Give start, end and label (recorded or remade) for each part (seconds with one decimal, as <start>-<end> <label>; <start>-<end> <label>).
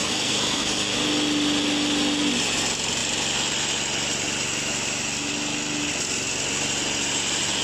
0.0-1.0 remade; 1.0-7.6 recorded